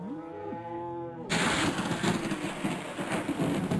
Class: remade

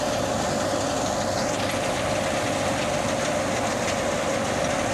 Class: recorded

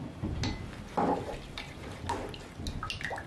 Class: recorded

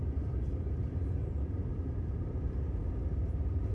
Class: remade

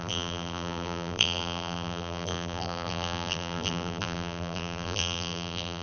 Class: remade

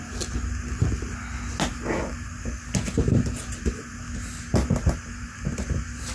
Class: recorded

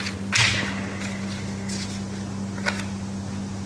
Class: recorded